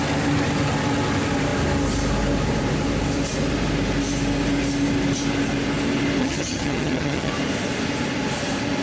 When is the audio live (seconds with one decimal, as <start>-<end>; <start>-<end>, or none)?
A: 0.0-6.2; 7.3-8.8